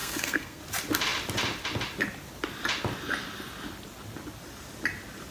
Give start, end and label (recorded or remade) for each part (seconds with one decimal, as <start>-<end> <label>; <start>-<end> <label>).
0.0-0.6 remade; 0.6-5.3 recorded